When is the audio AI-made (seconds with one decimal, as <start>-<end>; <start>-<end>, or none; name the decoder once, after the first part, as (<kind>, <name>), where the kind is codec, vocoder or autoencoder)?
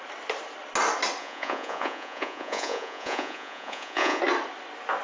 1.2-4.2 (vocoder, Vocos)